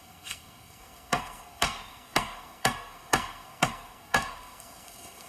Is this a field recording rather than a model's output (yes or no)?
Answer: no